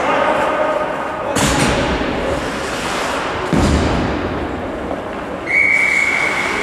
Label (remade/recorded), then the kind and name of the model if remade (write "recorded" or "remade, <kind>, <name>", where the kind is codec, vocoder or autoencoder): recorded